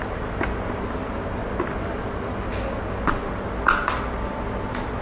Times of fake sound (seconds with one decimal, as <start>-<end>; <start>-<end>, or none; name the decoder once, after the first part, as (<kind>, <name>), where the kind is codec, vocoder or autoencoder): none